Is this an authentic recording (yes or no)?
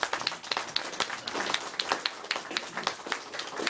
yes